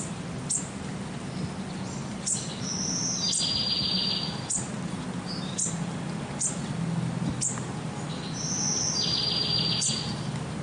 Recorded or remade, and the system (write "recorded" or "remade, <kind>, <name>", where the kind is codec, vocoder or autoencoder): recorded